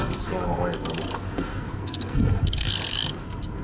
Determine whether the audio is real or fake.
fake